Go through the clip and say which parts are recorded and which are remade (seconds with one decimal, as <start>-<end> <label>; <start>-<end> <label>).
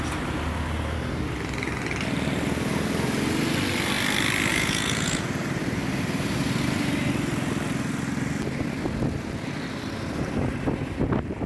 0.0-4.5 recorded; 4.5-5.3 remade; 5.3-11.5 recorded